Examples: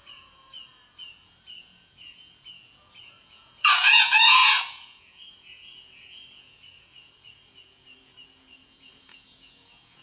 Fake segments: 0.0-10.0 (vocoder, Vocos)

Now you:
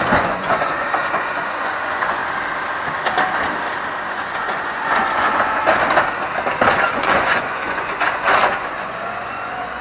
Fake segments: 0.0-2.2 (vocoder, Vocos); 4.1-5.6; 6.7-9.8

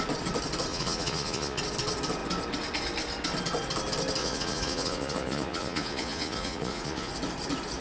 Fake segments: 0.7-1.6 (vocoder, Vocos); 4.2-7.1

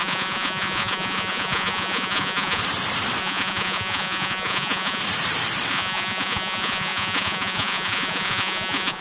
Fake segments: 0.0-2.6 (vocoder, Vocos); 3.2-5.0; 5.7-9.0